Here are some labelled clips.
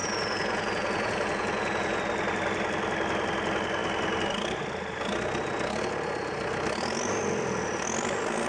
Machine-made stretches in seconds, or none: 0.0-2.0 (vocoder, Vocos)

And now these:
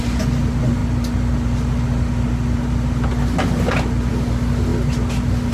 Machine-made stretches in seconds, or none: none

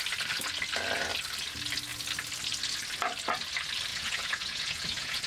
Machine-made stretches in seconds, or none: 3.9-5.3 (vocoder, Vocos)

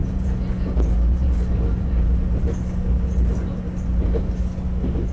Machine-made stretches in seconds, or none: 0.0-0.7 (vocoder, Vocos)

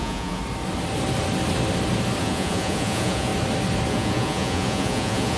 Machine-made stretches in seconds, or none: 0.0-0.4 (vocoder, Vocos); 2.2-3.3; 3.9-5.4

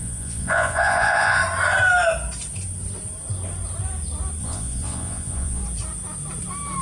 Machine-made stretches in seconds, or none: 0.0-1.4 (vocoder, Vocos); 4.4-5.6